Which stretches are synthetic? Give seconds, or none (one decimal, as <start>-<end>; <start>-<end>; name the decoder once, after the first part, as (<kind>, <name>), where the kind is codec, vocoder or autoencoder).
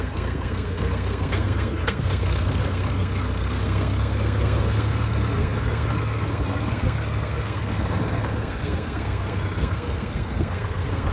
0.0-11.1 (codec, SNAC)